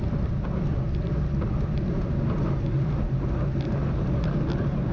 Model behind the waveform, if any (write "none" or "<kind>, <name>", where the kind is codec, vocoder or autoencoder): vocoder, BigVGAN v2